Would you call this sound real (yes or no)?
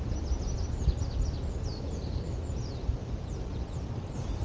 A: yes